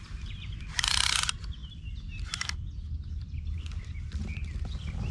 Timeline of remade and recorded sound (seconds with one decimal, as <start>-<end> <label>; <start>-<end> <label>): 0.0-5.1 recorded